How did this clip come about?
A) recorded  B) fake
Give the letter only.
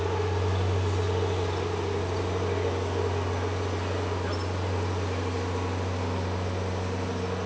A